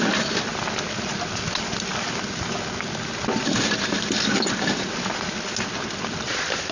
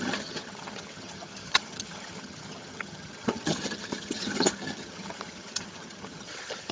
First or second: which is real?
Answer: first